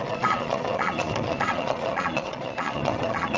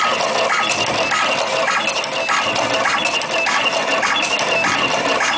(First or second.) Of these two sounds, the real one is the second